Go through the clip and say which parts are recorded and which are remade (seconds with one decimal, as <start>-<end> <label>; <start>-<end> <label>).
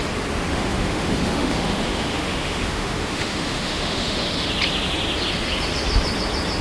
0.0-0.5 recorded; 0.5-4.5 remade; 4.5-6.6 recorded